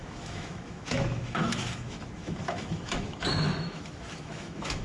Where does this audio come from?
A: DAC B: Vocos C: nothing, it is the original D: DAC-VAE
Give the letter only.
D